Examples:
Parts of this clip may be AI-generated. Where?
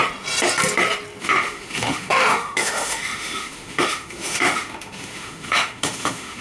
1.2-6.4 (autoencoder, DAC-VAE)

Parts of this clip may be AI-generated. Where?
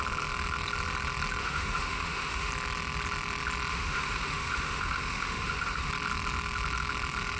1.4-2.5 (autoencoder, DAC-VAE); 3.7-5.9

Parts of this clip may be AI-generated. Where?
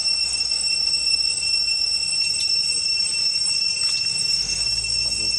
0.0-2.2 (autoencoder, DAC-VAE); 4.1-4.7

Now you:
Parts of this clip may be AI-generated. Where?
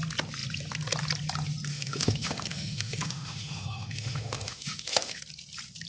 1.7-5.2 (autoencoder, DAC-VAE)